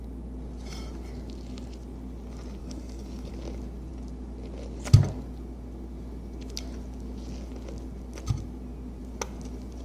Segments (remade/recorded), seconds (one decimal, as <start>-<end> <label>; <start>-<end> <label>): 0.0-2.6 recorded; 2.6-3.3 remade; 3.3-9.8 recorded

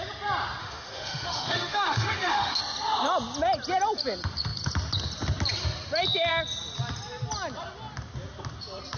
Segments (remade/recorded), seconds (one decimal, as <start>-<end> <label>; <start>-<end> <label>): 0.0-0.6 recorded; 0.6-2.6 remade; 2.6-9.0 recorded

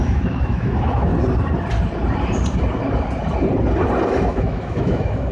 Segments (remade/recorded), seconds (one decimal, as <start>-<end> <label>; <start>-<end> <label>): 0.0-1.1 remade; 1.1-4.3 recorded; 4.3-5.3 remade

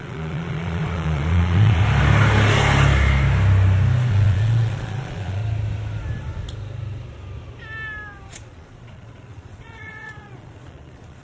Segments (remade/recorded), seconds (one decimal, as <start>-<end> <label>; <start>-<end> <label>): 0.0-1.8 remade; 1.8-4.1 recorded; 4.1-5.4 remade; 5.4-8.3 recorded; 8.3-11.2 remade